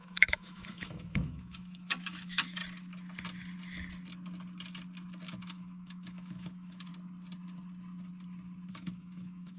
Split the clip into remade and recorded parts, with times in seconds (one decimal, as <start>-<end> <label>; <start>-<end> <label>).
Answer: 0.0-2.6 remade; 2.6-5.4 recorded; 5.4-6.9 remade; 6.9-8.7 recorded; 8.7-9.6 remade